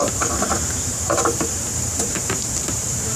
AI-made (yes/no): yes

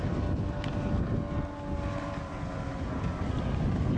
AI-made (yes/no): no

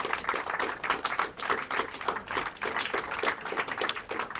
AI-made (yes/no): no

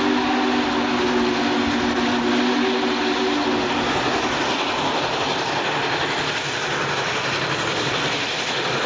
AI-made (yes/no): no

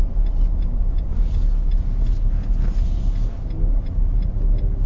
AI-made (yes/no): no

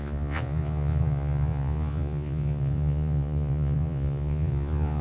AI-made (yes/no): yes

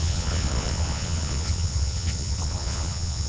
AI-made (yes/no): yes